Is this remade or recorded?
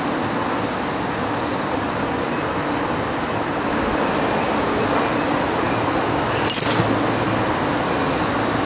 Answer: recorded